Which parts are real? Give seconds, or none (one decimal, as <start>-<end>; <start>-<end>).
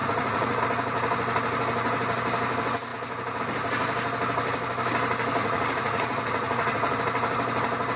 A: 0.6-5.4; 7.0-8.0